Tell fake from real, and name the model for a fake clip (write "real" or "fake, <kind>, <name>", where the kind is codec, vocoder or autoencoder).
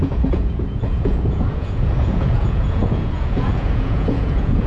fake, vocoder, Vocos